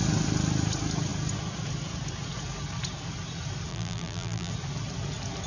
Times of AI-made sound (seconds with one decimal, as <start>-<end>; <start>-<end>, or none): 3.7-4.5